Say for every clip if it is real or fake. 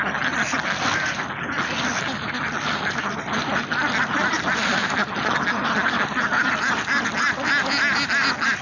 real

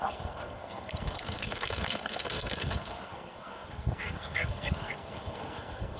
fake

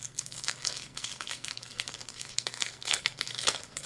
fake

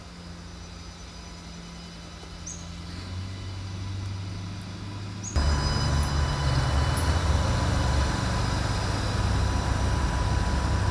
real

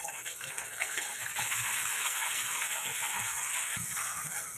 fake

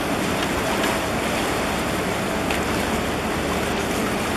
real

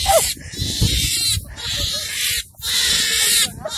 real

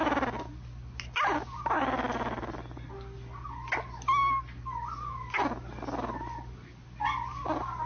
real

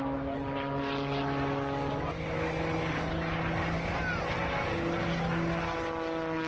real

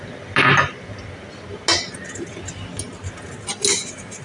real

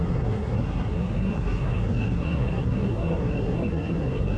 fake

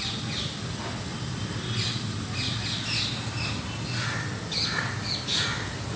real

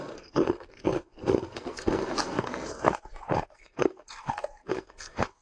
fake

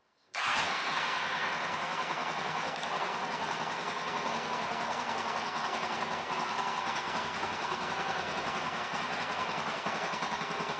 fake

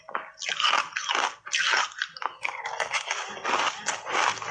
real